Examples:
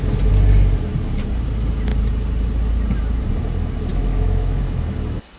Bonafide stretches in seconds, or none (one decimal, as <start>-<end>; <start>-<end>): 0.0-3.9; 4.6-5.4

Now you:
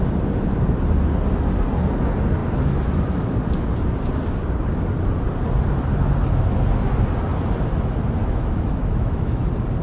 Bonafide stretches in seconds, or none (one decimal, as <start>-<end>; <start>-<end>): 0.0-8.2; 9.4-9.8

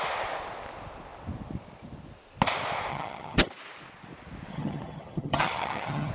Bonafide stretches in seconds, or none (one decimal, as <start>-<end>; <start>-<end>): 0.0-2.9; 3.5-4.5

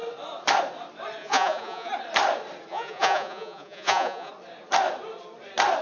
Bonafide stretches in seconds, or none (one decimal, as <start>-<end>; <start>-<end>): 0.0-1.2; 1.9-2.7; 4.3-5.8